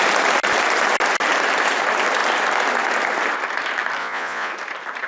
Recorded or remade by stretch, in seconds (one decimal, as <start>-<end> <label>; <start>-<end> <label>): 0.0-4.0 recorded; 4.0-4.5 remade; 4.5-5.1 recorded